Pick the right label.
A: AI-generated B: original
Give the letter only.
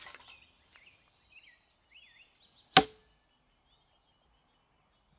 B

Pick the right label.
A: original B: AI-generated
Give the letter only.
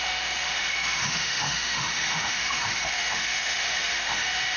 B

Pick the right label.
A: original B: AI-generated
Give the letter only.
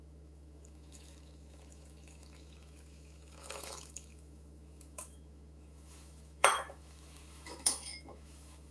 B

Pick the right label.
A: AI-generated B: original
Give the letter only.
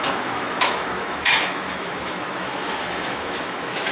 A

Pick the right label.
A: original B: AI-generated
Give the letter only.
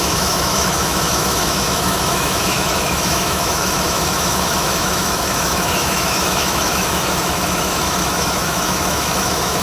B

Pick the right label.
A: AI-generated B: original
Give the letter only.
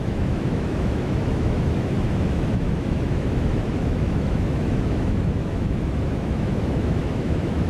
A